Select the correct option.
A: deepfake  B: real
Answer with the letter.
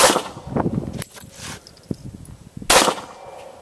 B